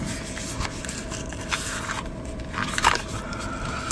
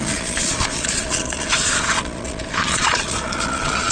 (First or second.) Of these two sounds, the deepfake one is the second